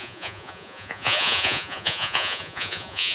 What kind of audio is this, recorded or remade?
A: remade